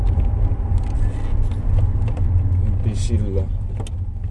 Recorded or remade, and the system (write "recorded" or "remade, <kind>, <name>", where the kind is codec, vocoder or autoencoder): recorded